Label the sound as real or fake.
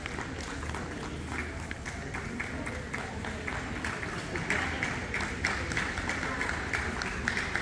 real